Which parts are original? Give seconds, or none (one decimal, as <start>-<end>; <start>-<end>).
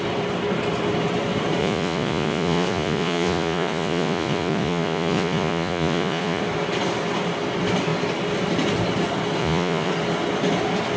0.0-1.6; 6.4-9.4; 9.9-11.0